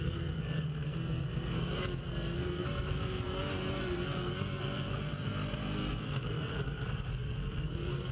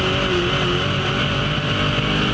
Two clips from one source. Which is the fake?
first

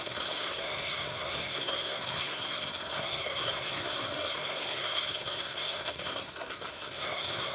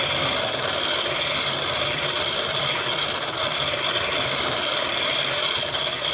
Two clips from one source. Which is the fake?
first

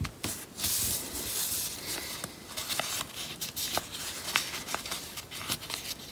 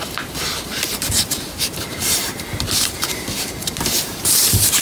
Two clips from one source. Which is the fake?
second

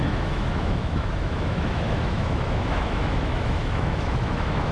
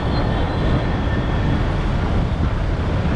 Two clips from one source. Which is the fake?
first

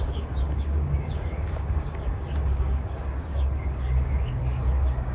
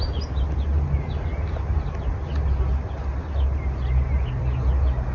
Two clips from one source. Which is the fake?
first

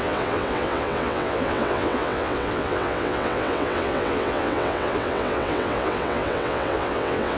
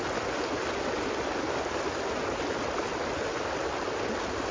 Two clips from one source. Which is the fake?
first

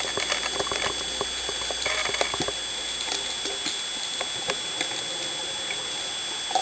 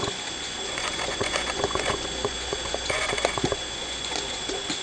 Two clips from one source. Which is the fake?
second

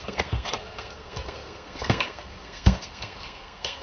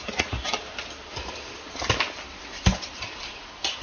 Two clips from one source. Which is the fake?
first